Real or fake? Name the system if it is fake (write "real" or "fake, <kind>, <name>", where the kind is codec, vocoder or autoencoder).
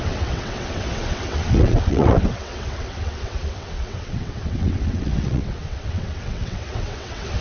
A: fake, vocoder, WaveNeXt